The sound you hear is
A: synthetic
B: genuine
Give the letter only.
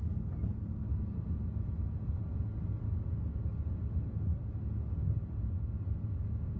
B